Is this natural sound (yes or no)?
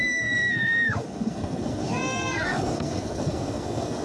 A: no